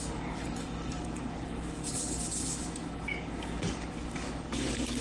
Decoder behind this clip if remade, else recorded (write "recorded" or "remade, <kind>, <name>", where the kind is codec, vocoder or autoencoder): remade, codec, DAC